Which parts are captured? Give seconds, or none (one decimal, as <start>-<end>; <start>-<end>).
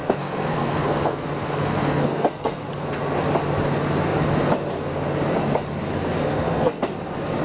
2.7-6.2; 6.8-7.4